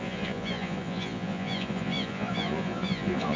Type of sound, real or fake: fake